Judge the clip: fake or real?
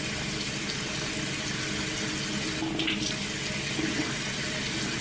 real